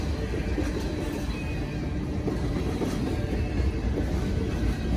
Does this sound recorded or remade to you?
recorded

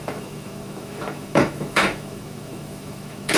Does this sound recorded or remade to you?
remade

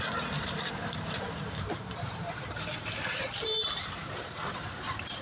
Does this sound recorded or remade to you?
remade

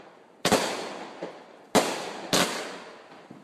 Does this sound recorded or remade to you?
recorded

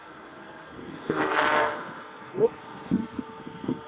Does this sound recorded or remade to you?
remade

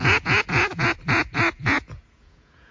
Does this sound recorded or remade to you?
remade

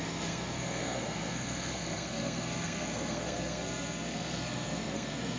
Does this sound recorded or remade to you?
remade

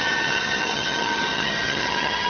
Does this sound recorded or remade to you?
remade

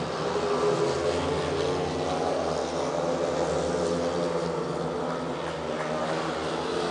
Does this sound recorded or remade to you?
recorded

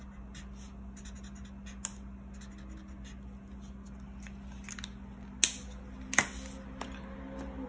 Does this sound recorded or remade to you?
recorded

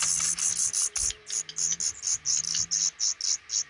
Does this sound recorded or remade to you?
recorded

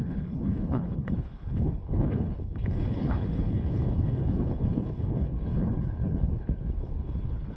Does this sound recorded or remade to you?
remade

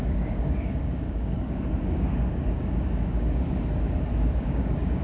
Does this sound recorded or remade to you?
remade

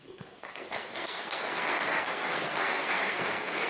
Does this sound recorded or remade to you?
remade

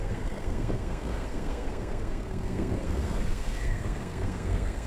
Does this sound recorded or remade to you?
remade